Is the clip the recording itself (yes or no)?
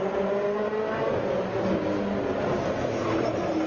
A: yes